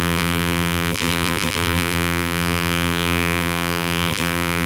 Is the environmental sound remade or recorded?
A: remade